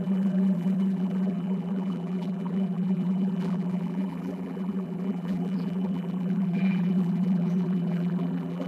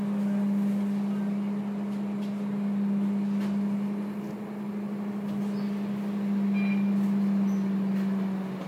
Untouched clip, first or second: second